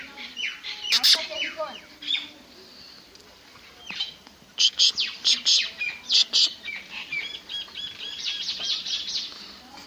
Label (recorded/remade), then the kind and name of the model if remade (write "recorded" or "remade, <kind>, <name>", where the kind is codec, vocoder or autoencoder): recorded